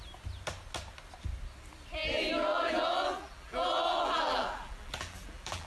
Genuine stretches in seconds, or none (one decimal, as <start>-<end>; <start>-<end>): 0.0-2.5